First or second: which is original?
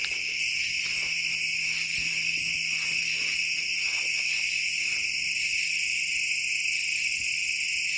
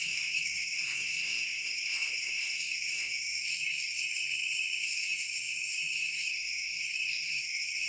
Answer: first